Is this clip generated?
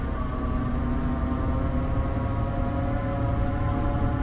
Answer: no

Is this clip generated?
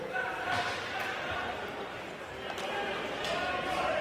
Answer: no